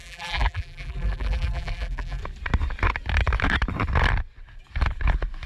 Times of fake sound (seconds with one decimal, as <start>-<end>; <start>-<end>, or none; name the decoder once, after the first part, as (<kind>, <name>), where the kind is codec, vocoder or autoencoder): 0.0-2.2 (vocoder, BigVGAN v2)